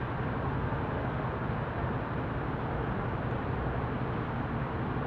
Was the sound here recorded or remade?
recorded